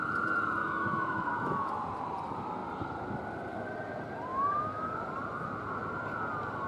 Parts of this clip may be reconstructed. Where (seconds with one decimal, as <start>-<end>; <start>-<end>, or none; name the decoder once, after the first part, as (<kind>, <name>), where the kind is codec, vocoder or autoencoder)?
0.6-1.7 (autoencoder, DAC-VAE); 4.3-4.9

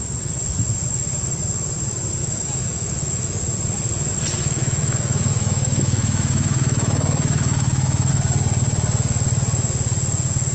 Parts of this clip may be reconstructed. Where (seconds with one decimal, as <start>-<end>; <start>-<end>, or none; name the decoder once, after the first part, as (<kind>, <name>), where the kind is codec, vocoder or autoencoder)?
2.2-3.4 (autoencoder, DAC-VAE); 4.4-8.1

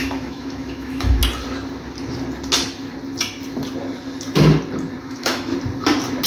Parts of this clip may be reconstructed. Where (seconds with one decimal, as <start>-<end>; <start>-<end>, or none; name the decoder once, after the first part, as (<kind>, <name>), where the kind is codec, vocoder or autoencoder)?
0.0-1.2 (autoencoder, DAC-VAE); 5.0-5.5

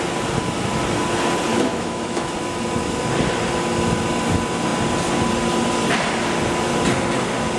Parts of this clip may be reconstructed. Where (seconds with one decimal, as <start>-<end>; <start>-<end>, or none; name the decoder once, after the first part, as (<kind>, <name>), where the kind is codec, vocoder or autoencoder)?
1.5-2.3 (autoencoder, DAC-VAE)